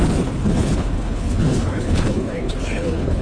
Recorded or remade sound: remade